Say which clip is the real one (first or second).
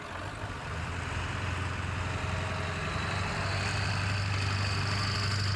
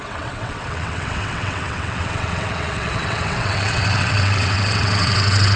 first